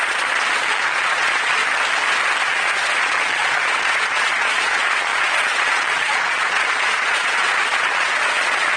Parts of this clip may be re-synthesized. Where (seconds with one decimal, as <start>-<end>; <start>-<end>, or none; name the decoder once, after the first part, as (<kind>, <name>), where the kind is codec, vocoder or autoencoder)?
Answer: 0.0-1.6 (vocoder, Vocos); 2.4-8.8

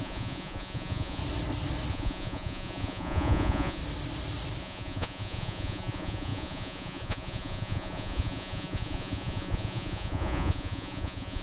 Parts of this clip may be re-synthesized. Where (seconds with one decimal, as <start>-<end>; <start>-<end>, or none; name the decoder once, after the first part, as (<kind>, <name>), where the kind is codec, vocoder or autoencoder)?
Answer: 0.0-1.2 (vocoder, Vocos); 1.9-3.8; 4.6-11.4

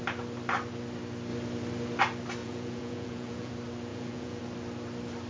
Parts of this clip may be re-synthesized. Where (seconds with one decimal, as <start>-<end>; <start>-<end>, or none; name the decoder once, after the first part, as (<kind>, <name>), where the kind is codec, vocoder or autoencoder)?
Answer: 2.4-3.5 (vocoder, Vocos); 3.9-4.4

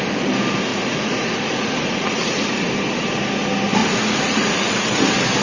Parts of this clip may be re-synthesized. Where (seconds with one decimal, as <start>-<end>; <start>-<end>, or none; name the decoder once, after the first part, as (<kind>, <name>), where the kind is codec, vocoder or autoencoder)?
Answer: 0.7-2.6 (vocoder, Vocos); 3.8-5.0

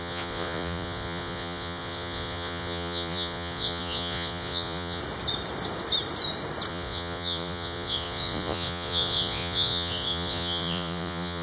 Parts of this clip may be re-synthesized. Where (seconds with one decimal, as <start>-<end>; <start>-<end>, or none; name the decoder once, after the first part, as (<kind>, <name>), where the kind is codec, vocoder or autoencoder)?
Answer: 0.0-5.0 (vocoder, Vocos); 6.7-11.4